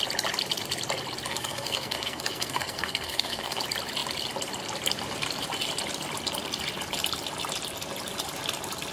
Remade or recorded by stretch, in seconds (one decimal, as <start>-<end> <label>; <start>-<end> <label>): 0.0-1.3 recorded; 1.3-3.6 remade; 3.6-8.9 recorded

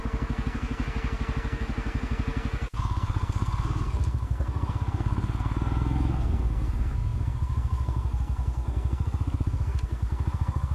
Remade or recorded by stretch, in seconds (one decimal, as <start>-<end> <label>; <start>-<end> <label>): 0.0-10.7 remade

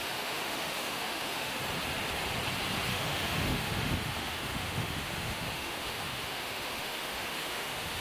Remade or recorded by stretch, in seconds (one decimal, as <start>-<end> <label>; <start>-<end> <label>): 0.0-1.6 remade; 1.6-2.9 recorded; 2.9-8.0 remade

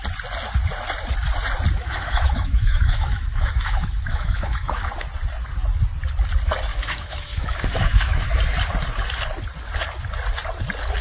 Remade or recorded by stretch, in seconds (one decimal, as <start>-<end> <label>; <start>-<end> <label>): 0.0-1.7 recorded; 1.7-4.9 remade; 4.9-6.7 recorded; 6.7-8.3 remade; 8.3-11.0 recorded